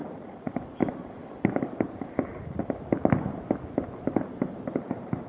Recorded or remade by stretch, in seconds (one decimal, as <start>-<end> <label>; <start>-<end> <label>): 0.0-0.5 remade; 0.5-5.3 recorded

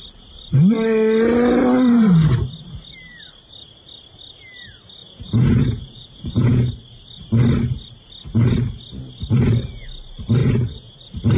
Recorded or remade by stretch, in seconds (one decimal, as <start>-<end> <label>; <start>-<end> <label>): 0.0-5.0 recorded; 5.0-6.7 remade; 6.7-10.4 recorded; 10.4-11.0 remade; 11.0-11.4 recorded

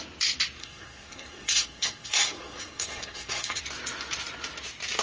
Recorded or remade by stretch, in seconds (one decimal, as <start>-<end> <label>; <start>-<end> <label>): 0.0-0.6 recorded; 0.6-3.6 remade; 3.6-5.0 recorded

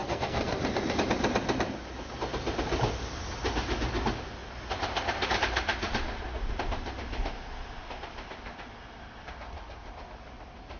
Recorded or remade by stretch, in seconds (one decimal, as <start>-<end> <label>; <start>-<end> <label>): 0.0-0.6 remade; 0.6-10.8 recorded

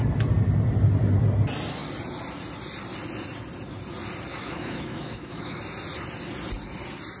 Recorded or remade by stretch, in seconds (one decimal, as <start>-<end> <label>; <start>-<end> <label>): 0.0-4.3 recorded; 4.3-5.6 remade; 5.6-7.2 recorded

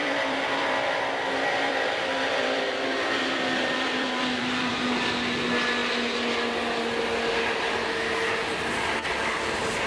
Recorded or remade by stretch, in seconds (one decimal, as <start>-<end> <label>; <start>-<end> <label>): 0.0-4.7 remade; 4.7-9.9 recorded